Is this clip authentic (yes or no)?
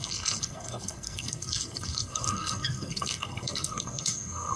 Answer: no